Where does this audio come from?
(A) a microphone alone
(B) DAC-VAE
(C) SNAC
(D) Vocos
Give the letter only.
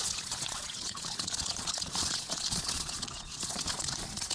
D